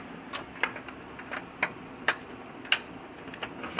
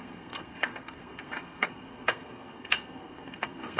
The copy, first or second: second